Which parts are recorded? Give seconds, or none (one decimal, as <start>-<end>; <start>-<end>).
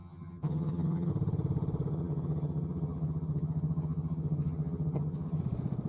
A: 1.1-1.9; 5.4-5.9